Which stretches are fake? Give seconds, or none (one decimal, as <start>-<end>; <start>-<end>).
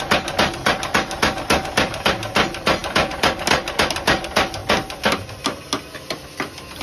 none